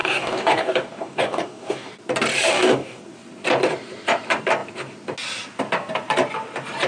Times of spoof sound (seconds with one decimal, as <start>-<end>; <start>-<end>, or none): 0.0-1.9; 2.5-3.0